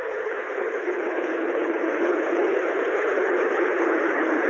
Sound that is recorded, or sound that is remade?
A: remade